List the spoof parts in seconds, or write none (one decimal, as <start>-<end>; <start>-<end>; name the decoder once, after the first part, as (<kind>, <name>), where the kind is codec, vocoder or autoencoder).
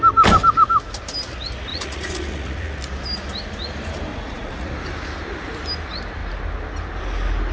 1.7-2.8 (vocoder, Vocos); 4.1-4.7